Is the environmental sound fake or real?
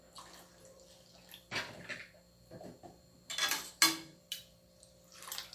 real